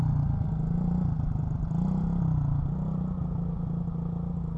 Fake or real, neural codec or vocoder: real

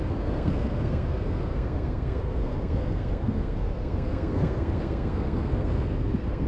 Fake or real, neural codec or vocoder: fake, codec, SNAC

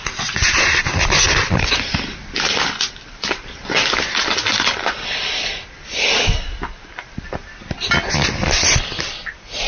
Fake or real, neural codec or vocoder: real